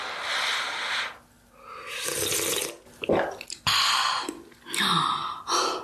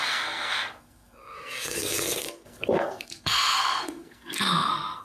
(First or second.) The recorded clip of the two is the first